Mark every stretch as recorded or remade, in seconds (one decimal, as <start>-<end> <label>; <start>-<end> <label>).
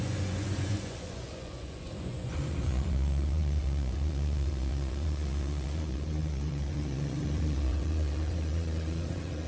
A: 0.0-9.5 remade